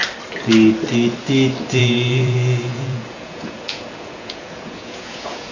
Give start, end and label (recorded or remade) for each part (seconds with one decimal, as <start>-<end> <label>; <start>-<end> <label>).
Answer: 0.0-1.8 recorded; 1.8-5.5 remade